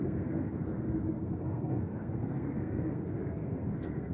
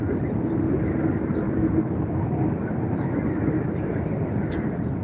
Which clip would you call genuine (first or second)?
second